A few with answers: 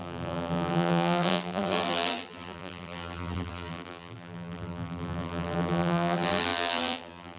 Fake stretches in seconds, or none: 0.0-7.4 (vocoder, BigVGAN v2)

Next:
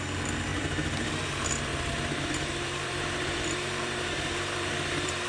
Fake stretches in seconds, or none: 0.5-1.1 (vocoder, BigVGAN v2); 1.7-5.3

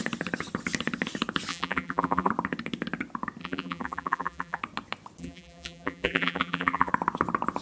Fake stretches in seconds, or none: 1.5-2.3 (vocoder, BigVGAN v2); 3.4-4.6; 5.2-6.9

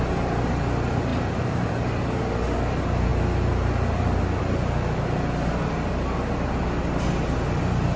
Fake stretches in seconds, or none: 1.1-2.2 (vocoder, BigVGAN v2)

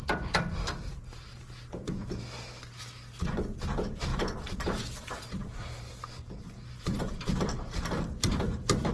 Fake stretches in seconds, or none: 1.3-2.2 (vocoder, BigVGAN v2); 4.1-8.9

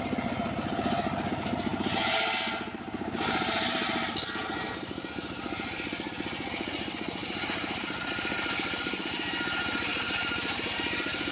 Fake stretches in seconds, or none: 7.2-9.0 (vocoder, BigVGAN v2); 9.9-11.3

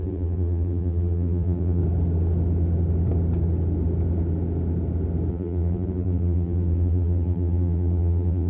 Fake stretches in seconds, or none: 0.0-1.8 (vocoder, BigVGAN v2); 5.3-8.5